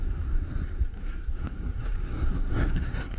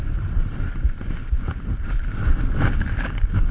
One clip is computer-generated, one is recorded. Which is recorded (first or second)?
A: second